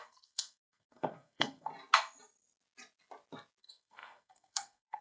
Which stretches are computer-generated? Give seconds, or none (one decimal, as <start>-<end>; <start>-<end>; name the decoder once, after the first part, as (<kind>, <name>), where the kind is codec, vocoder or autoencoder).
0.0-1.7 (codec, SNAC); 3.6-5.0